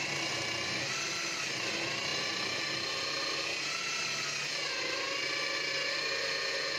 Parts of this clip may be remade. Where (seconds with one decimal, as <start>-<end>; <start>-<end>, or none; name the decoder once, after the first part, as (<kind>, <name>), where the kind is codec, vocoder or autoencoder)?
none